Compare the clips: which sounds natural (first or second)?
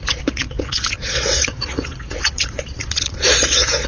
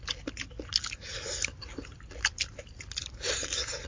second